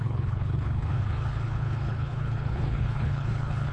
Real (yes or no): no